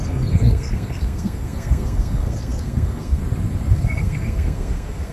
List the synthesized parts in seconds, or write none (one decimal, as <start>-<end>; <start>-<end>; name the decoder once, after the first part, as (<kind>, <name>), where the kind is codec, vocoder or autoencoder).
0.0-3.2 (codec, SNAC); 3.7-5.1